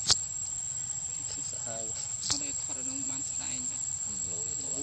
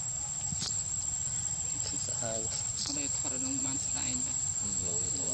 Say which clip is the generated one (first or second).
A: second